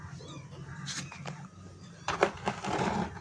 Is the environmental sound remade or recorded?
recorded